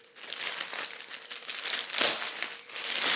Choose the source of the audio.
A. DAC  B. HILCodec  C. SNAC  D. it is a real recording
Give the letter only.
D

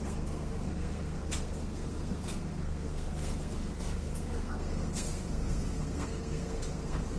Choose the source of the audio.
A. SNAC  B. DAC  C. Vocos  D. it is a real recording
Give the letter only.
A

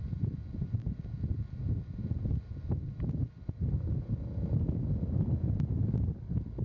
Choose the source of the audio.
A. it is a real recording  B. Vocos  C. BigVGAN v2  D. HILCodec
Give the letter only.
A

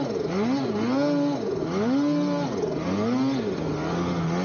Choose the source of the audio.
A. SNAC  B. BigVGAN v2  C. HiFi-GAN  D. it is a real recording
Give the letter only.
D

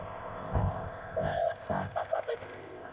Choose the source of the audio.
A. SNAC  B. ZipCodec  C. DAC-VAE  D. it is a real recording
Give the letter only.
B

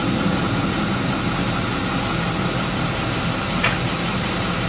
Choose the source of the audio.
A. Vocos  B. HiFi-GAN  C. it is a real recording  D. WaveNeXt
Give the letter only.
C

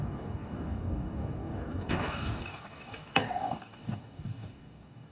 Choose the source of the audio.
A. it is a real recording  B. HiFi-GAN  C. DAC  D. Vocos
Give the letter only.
C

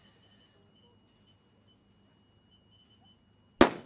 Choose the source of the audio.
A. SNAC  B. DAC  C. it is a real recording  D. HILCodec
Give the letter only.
C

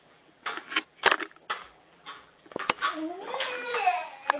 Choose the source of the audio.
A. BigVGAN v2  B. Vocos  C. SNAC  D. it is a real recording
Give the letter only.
A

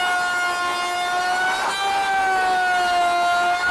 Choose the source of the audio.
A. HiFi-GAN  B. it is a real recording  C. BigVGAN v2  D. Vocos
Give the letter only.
B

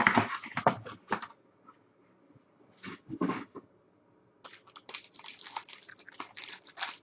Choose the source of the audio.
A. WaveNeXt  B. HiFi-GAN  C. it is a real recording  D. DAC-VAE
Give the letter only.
C